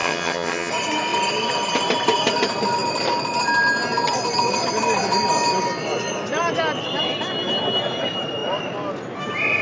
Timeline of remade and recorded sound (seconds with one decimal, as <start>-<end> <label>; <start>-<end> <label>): 0.0-0.7 remade; 0.7-9.6 recorded